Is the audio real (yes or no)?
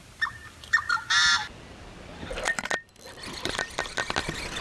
yes